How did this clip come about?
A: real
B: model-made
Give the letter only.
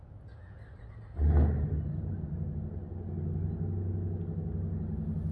A